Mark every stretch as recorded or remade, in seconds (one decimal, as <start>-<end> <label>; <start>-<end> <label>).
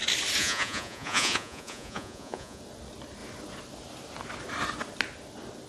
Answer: 0.0-0.4 recorded; 0.4-2.6 remade; 2.6-5.7 recorded